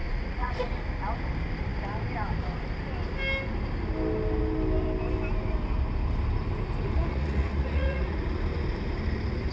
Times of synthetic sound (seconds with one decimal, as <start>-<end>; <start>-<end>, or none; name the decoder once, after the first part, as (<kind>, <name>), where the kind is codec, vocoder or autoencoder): 0.0-0.5 (vocoder, Vocos); 7.1-8.2